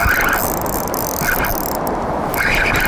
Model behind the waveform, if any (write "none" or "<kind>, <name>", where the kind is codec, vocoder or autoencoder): none